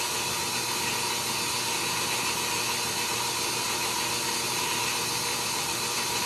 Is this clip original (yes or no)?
yes